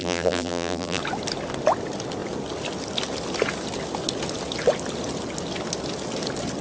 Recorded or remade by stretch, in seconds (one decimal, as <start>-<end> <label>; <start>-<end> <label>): 0.0-1.0 remade; 1.0-6.6 recorded